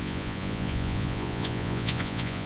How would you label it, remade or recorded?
remade